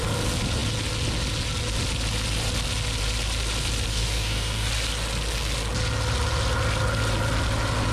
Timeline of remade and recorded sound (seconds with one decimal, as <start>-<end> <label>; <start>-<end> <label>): 0.0-3.9 recorded; 3.9-4.7 remade; 4.7-7.9 recorded